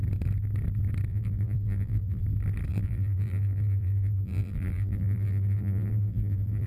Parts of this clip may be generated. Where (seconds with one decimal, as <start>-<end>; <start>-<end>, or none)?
1.1-2.2; 2.7-6.7